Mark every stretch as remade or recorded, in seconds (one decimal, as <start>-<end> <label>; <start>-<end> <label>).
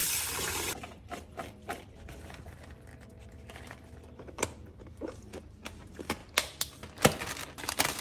0.0-2.9 recorded; 2.9-5.2 remade; 5.2-8.0 recorded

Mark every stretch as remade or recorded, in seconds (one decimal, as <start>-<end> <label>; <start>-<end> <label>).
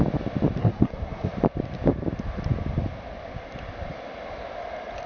0.0-0.6 recorded; 0.6-1.3 remade; 1.3-5.1 recorded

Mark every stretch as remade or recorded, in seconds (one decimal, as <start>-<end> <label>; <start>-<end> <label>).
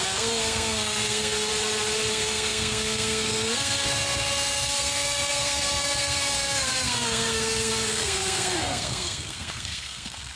0.0-1.5 remade; 1.5-2.1 recorded; 2.1-10.4 remade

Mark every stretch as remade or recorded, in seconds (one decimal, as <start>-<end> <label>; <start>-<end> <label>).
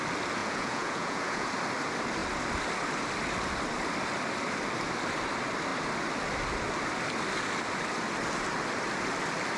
0.0-0.4 recorded; 0.4-1.5 remade; 1.5-9.6 recorded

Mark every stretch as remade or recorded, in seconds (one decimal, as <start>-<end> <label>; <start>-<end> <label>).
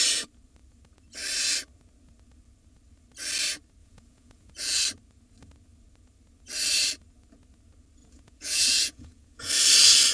0.0-3.8 recorded; 3.8-4.8 remade; 4.8-8.0 recorded; 8.0-9.5 remade; 9.5-10.1 recorded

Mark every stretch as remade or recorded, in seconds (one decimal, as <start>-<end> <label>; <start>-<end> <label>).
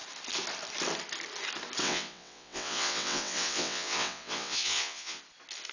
0.0-1.8 recorded; 1.8-5.2 remade; 5.2-5.7 recorded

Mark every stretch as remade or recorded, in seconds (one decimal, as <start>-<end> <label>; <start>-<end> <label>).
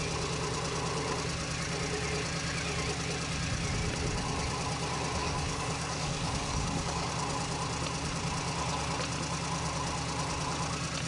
0.0-5.2 recorded; 5.2-7.1 remade; 7.1-11.1 recorded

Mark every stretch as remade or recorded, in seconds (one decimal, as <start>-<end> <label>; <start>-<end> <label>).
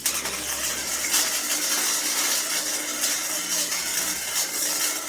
0.0-3.1 recorded; 3.1-3.9 remade; 3.9-5.1 recorded